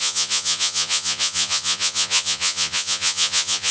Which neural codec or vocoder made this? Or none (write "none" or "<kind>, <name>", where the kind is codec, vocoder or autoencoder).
vocoder, Vocos